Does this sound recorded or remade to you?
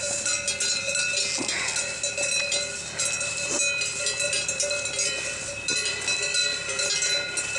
recorded